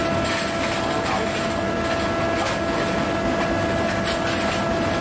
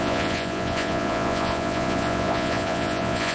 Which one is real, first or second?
first